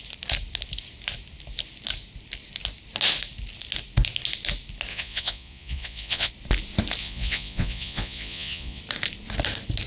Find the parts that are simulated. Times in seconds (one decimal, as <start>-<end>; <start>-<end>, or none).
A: 4.9-6.3; 7.0-8.8